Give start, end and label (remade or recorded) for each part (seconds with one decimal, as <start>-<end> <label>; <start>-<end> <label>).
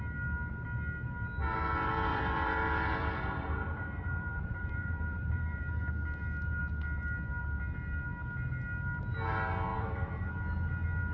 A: 0.0-2.1 recorded; 2.1-5.7 remade; 5.7-9.7 recorded; 9.7-10.3 remade; 10.3-11.1 recorded